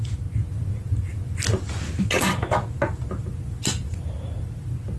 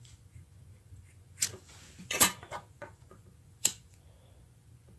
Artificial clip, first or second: second